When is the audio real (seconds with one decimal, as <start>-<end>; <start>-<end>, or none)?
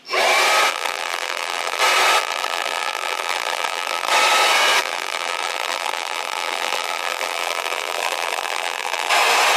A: 0.0-0.7; 1.8-2.2; 4.1-4.8; 9.1-9.6